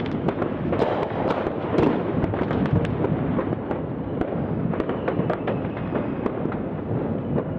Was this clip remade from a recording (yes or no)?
no